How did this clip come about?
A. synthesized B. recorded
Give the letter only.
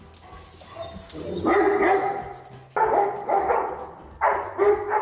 B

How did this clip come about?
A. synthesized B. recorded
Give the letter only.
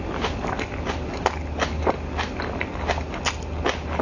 B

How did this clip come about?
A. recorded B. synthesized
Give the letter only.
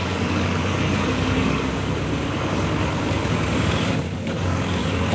B